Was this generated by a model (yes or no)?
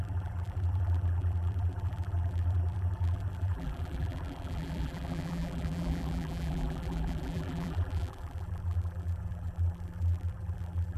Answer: yes